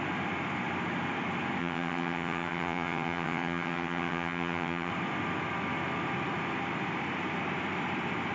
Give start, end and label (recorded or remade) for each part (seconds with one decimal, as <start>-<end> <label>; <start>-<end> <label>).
0.0-1.6 recorded; 1.6-4.9 remade; 4.9-8.3 recorded